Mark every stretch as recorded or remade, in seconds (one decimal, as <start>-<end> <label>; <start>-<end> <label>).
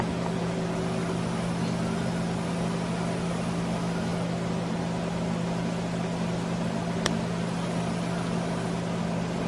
0.0-9.5 recorded